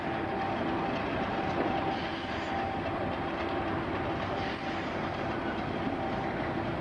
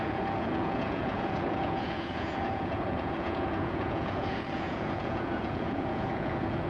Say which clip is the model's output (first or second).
second